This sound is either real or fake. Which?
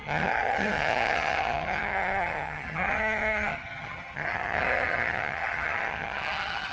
fake